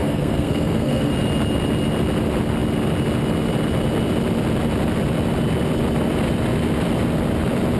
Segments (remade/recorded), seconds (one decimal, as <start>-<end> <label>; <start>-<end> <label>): 0.0-1.1 remade; 1.1-7.8 recorded

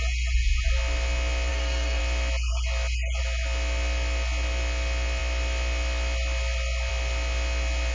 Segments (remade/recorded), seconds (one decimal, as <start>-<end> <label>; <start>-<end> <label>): 0.0-1.5 recorded; 1.5-2.0 remade; 2.0-7.9 recorded

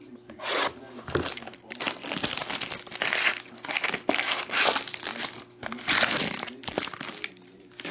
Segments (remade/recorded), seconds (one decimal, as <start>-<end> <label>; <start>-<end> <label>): 0.0-7.9 recorded

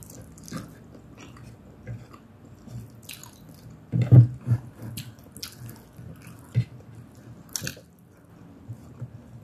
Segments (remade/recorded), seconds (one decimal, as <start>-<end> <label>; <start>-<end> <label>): 0.0-9.4 recorded